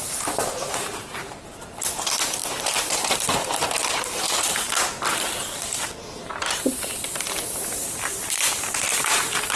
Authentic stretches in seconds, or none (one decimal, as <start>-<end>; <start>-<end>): 4.7-7.5